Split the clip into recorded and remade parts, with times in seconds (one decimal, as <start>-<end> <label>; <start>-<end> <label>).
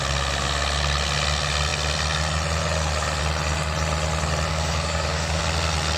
0.0-4.5 recorded; 4.5-5.4 remade; 5.4-6.0 recorded